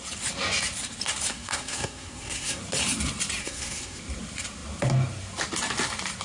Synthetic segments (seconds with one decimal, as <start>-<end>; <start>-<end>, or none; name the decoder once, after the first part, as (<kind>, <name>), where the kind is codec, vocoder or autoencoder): 1.3-2.6 (codec, SNAC); 3.4-4.0